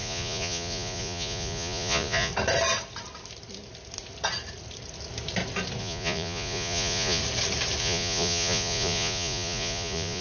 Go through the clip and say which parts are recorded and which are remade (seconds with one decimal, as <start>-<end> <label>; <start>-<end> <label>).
0.0-2.3 remade; 2.3-5.8 recorded; 5.8-7.2 remade; 7.2-7.8 recorded; 7.8-10.2 remade